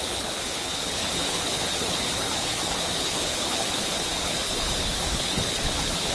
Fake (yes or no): yes